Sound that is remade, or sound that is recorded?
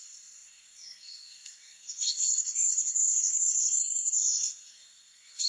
remade